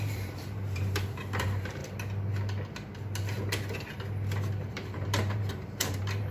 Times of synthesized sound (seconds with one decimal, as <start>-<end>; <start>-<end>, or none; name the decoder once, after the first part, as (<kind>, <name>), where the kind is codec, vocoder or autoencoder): 0.0-1.8 (vocoder, BigVGAN v2); 4.7-6.3